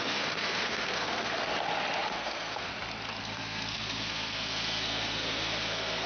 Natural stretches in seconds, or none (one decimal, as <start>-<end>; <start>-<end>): 1.3-2.1; 2.7-3.2